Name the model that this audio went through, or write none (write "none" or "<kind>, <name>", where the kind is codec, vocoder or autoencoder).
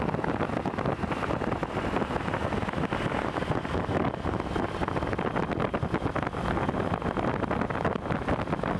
none